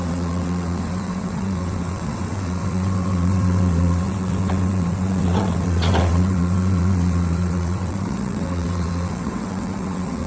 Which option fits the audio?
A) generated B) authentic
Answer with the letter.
A